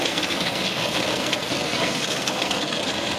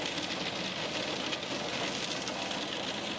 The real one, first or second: second